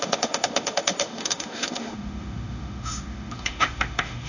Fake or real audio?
fake